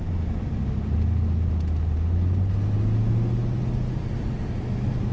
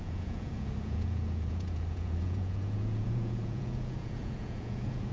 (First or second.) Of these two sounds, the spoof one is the second